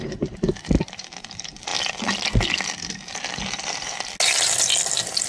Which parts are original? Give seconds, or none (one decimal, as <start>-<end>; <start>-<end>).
0.0-5.3